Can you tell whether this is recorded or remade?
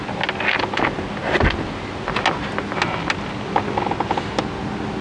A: recorded